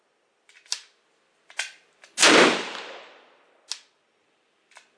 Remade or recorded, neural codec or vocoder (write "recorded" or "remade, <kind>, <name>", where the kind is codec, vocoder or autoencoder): recorded